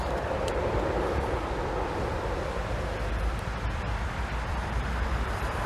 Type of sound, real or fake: fake